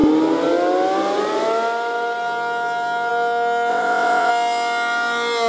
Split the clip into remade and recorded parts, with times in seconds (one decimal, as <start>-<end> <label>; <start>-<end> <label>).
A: 0.0-3.7 recorded; 3.7-4.3 remade; 4.3-5.5 recorded